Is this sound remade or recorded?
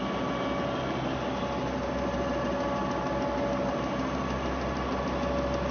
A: recorded